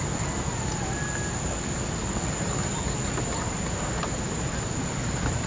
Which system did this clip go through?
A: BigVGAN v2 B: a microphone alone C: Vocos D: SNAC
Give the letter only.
B